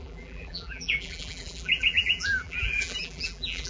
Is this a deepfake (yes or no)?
yes